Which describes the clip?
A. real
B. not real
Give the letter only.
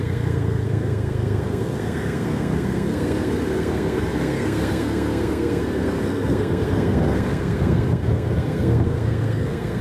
B